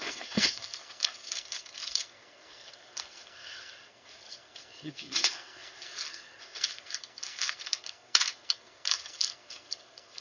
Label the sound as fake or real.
fake